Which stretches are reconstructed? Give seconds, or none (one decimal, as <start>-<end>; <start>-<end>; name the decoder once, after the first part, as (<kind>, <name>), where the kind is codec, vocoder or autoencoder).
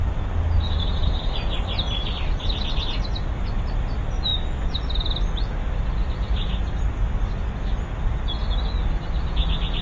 0.0-4.3 (vocoder, BigVGAN v2); 9.3-9.8